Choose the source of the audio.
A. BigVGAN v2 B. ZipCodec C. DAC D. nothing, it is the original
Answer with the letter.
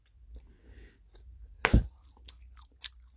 D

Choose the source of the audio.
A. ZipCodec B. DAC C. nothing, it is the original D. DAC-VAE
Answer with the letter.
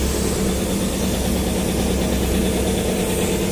C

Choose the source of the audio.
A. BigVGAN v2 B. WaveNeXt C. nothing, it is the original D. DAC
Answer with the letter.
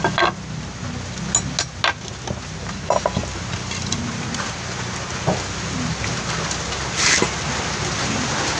C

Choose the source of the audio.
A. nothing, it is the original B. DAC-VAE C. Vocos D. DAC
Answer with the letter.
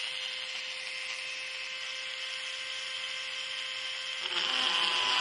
A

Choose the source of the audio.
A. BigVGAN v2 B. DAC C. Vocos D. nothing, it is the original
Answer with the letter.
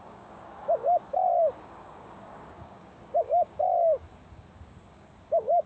B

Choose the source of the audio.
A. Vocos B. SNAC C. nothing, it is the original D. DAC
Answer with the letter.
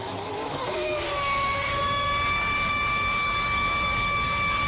D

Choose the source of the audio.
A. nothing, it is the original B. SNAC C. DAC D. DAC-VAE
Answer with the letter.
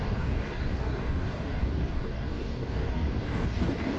C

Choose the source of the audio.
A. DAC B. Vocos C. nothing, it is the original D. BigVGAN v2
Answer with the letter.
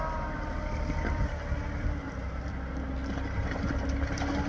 C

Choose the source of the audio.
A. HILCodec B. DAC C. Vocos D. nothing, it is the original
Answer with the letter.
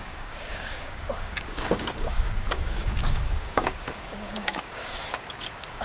B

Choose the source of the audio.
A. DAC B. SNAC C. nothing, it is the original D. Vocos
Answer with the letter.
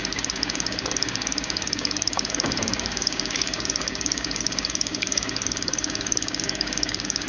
A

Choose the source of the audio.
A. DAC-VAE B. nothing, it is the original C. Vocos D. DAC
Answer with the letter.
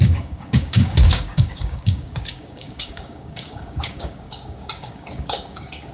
D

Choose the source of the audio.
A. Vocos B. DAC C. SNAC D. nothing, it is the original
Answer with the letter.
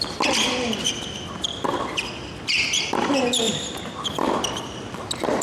D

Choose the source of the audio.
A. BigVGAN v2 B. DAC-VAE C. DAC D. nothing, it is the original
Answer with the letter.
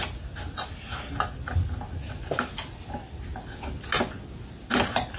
D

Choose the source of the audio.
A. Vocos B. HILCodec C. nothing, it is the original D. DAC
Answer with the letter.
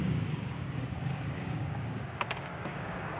D